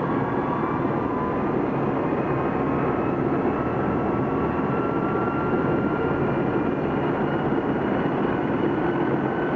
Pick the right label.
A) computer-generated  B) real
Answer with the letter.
B